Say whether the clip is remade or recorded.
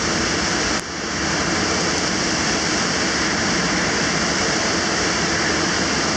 recorded